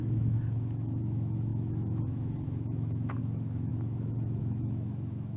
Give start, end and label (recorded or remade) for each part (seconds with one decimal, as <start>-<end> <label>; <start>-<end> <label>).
0.0-5.4 remade